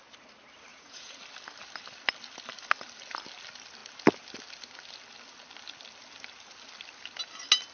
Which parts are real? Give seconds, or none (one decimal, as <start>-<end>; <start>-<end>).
0.0-0.7; 1.2-7.7